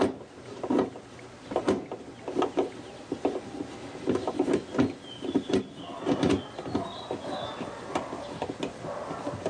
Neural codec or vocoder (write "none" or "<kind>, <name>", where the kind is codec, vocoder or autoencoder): none